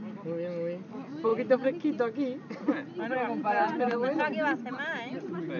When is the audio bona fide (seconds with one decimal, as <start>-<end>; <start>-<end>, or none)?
0.0-5.6